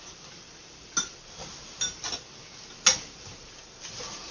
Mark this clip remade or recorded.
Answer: recorded